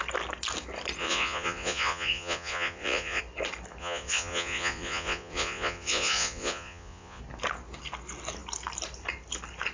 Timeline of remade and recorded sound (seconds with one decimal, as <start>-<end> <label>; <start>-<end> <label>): 0.0-1.0 recorded; 1.0-3.2 remade; 3.2-3.8 recorded; 3.8-7.2 remade; 7.2-9.7 recorded